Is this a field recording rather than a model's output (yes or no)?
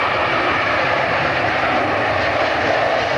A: yes